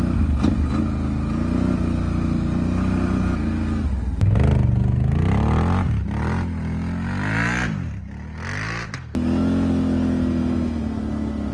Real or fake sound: real